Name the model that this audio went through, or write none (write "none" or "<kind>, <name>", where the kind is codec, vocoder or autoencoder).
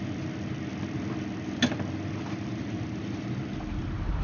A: none